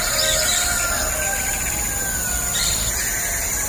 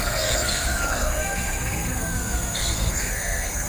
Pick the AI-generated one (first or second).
second